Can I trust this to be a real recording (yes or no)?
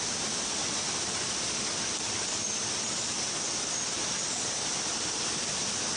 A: yes